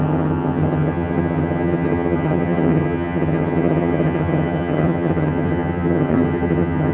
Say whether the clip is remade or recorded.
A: remade